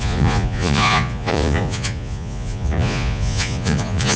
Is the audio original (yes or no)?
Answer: no